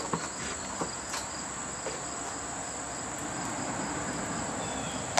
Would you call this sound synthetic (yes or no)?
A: no